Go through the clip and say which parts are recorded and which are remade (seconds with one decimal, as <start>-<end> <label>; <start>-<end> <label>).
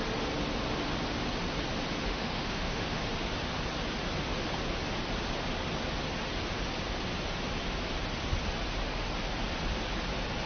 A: 0.0-2.1 recorded; 2.1-3.0 remade; 3.0-10.5 recorded